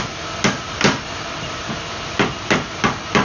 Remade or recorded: recorded